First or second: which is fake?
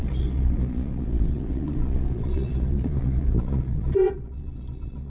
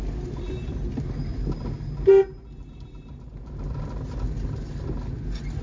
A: first